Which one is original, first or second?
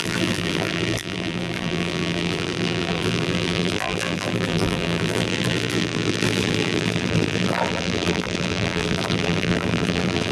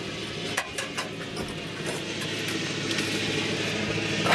second